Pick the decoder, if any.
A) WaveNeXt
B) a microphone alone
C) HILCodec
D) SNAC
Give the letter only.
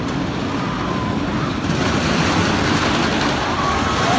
B